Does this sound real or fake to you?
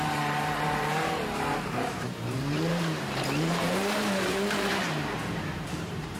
fake